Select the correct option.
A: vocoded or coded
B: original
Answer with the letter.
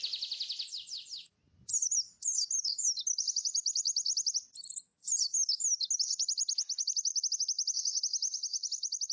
B